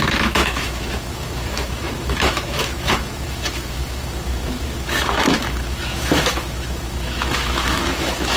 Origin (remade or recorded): remade